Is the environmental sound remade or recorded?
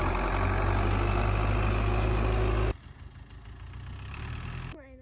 recorded